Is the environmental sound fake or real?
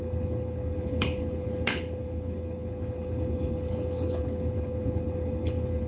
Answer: fake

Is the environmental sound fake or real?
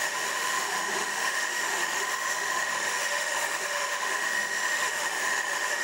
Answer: fake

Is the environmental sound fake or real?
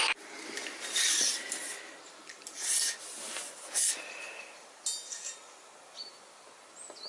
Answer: real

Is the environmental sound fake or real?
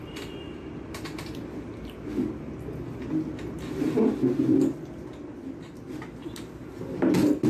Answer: real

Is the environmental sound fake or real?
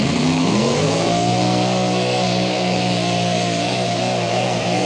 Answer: fake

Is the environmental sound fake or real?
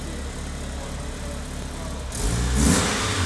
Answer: real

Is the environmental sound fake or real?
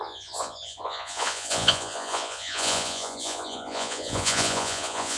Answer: fake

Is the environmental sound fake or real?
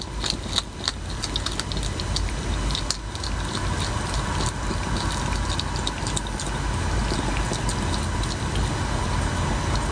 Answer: real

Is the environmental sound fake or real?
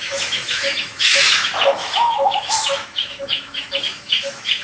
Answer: fake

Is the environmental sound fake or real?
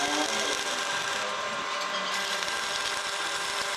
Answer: real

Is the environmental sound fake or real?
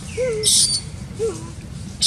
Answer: real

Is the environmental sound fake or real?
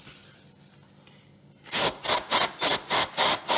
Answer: real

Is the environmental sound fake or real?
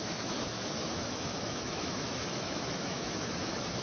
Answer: fake